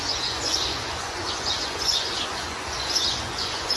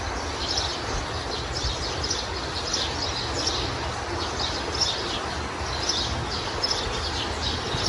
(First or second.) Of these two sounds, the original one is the second